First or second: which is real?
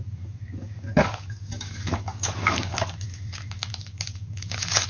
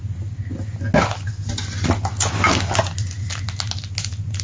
second